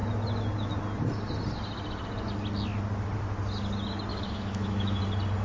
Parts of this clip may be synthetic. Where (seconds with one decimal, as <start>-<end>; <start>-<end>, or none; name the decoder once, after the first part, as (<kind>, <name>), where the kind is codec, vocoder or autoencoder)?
4.1-5.0 (autoencoder, DAC-VAE)